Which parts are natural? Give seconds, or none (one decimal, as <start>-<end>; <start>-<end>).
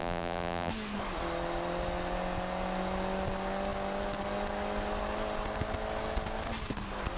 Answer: 0.7-7.2